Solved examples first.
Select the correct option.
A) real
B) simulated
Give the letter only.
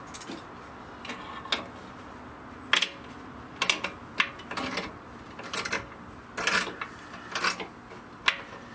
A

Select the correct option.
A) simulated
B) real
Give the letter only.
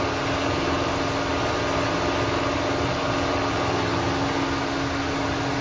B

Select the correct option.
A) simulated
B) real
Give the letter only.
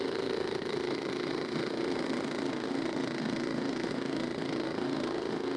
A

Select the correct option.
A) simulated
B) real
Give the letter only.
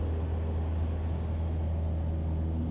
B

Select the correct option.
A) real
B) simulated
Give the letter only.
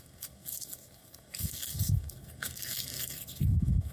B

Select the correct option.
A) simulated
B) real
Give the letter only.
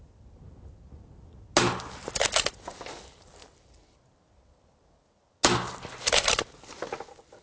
B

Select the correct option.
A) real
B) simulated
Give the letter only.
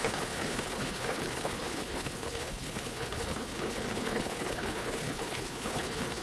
B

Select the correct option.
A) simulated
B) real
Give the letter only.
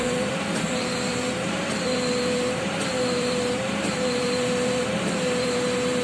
A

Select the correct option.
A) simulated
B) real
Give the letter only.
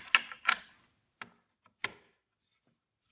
B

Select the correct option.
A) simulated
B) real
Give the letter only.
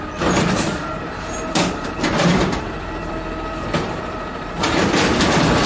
A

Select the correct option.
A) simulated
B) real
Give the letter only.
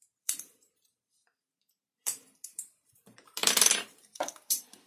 A